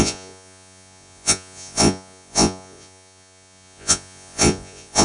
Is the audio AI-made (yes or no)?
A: yes